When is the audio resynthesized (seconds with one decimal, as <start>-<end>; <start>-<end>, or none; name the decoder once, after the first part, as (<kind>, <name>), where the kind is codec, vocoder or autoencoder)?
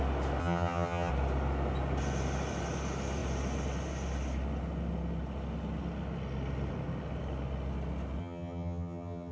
0.4-1.1 (vocoder, HiFi-GAN); 8.2-9.3